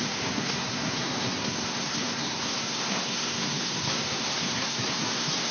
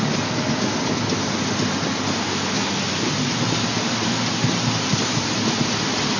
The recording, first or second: second